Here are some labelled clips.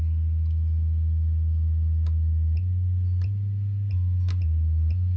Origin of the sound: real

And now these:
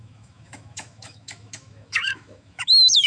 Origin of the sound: fake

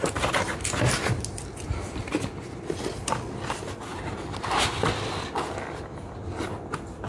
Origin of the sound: real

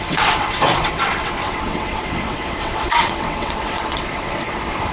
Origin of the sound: fake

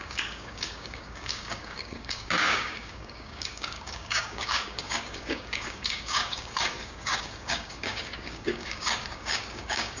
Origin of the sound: fake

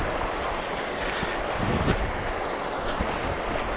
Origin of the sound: real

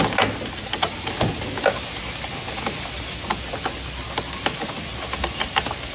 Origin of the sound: real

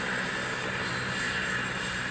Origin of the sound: real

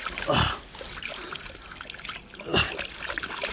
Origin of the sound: real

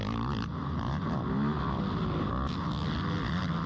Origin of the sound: real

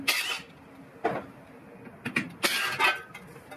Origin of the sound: real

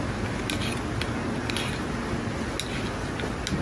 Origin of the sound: real